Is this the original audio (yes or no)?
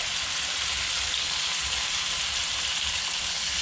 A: yes